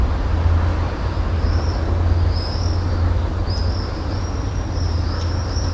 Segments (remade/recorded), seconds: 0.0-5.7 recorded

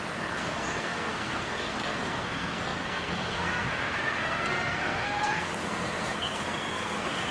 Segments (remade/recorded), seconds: 0.0-7.3 remade

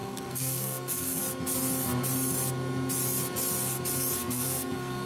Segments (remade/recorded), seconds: 0.0-1.2 remade; 1.2-4.2 recorded; 4.2-5.1 remade

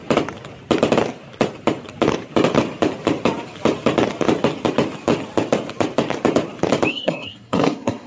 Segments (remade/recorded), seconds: 0.0-6.9 recorded; 6.9-8.1 remade

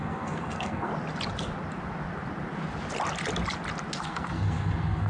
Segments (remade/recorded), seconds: 0.0-0.9 remade; 0.9-4.0 recorded; 4.0-5.1 remade